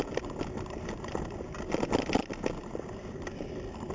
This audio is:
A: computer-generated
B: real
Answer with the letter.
B